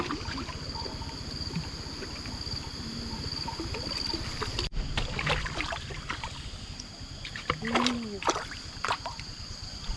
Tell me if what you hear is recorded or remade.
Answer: recorded